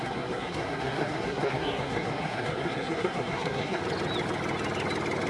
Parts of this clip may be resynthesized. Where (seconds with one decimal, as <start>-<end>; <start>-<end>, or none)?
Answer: 0.0-3.8